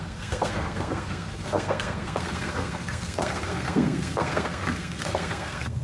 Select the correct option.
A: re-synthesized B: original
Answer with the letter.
A